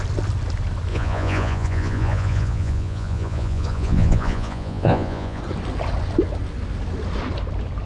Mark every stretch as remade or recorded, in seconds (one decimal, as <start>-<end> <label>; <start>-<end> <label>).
0.0-0.9 recorded; 0.9-5.4 remade; 5.4-7.9 recorded

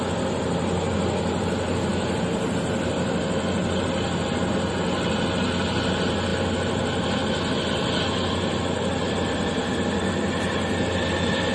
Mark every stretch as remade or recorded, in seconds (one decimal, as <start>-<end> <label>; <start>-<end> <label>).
0.0-11.5 recorded

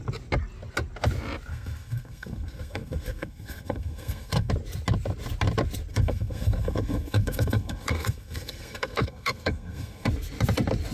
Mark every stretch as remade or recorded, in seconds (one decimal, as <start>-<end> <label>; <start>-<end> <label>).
0.0-1.5 recorded; 1.5-4.5 remade; 4.5-5.9 recorded; 5.9-10.1 remade; 10.1-10.9 recorded

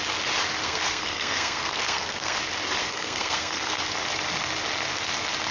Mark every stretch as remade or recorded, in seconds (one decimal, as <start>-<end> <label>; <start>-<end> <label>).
0.0-0.6 recorded; 0.6-2.4 remade; 2.4-2.8 recorded; 2.8-3.8 remade; 3.8-5.5 recorded

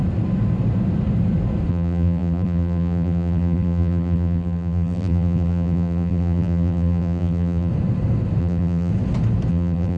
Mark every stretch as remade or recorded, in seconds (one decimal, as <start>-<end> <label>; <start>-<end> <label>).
0.0-1.7 recorded; 1.7-7.7 remade; 7.7-8.4 recorded; 8.4-8.9 remade; 8.9-9.5 recorded; 9.5-10.0 remade

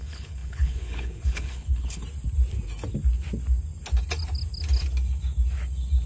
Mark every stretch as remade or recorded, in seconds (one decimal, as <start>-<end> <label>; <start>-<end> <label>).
0.0-2.0 remade; 2.0-6.1 recorded

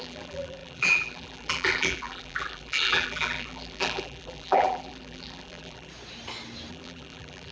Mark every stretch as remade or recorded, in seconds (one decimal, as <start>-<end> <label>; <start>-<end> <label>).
0.0-5.9 remade; 5.9-6.7 recorded; 6.7-7.5 remade